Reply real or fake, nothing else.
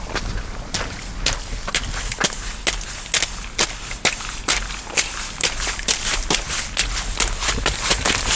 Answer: real